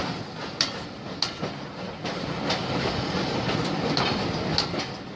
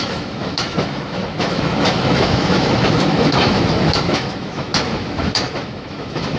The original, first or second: first